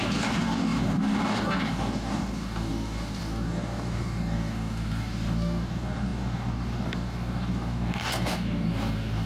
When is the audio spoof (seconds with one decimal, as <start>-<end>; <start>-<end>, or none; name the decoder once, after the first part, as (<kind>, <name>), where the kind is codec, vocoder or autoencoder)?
0.0-9.3 (codec, DAC)